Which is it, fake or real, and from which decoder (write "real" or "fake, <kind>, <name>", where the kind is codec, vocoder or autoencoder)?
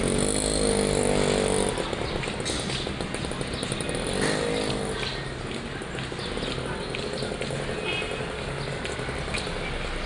real